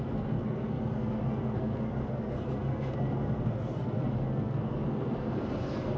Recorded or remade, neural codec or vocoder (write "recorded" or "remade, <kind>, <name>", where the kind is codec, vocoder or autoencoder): remade, codec, SNAC